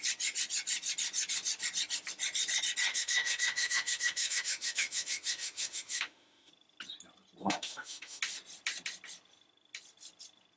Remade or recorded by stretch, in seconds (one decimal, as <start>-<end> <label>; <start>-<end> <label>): 0.0-2.9 recorded; 2.9-6.5 remade; 6.5-7.4 recorded; 7.4-8.2 remade; 8.2-10.6 recorded